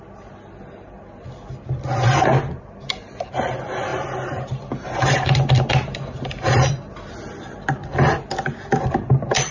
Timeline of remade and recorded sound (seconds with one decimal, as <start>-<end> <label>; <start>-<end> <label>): 0.0-9.5 recorded